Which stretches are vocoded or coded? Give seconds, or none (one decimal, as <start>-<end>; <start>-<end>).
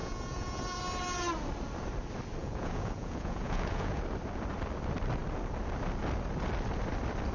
0.0-0.8; 2.4-4.0